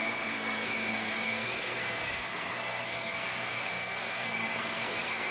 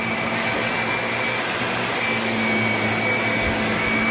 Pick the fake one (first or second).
first